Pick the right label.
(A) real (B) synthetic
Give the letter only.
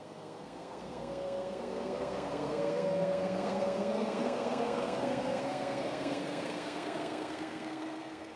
B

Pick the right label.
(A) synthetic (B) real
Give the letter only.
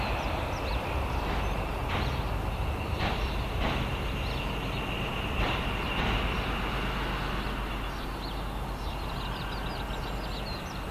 B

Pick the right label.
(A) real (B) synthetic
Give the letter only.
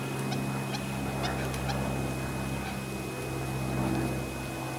A